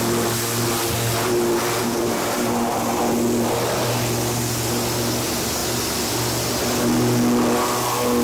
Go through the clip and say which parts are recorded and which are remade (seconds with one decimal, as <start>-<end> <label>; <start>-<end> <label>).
0.0-1.8 recorded; 1.8-3.0 remade; 3.0-8.2 recorded